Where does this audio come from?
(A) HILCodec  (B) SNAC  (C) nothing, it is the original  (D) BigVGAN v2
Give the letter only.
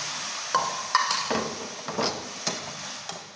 C